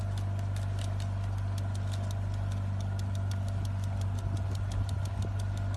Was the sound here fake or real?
real